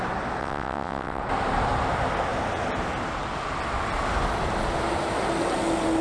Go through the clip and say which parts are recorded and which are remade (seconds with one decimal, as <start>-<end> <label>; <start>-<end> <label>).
0.0-0.4 recorded; 0.4-1.2 remade; 1.2-6.0 recorded